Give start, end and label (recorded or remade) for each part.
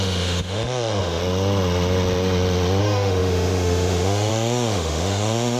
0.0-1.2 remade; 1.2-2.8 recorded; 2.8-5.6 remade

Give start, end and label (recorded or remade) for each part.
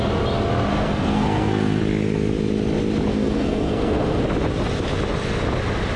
0.0-0.7 recorded; 0.7-1.8 remade; 1.8-3.1 recorded; 3.1-4.2 remade; 4.2-6.0 recorded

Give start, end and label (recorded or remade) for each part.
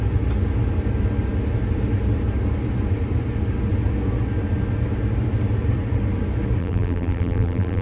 0.0-6.6 recorded; 6.6-7.8 remade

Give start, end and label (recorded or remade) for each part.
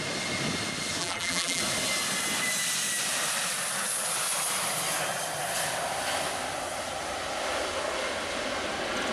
0.0-1.0 recorded; 1.0-1.6 remade; 1.6-9.1 recorded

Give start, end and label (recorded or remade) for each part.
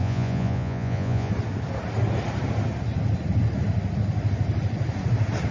0.0-1.3 remade; 1.3-5.5 recorded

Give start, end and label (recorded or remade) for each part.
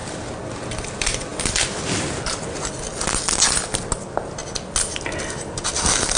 0.0-6.2 recorded